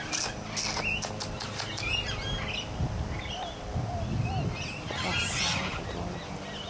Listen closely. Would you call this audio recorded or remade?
recorded